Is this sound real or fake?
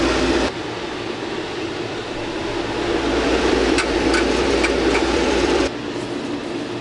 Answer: fake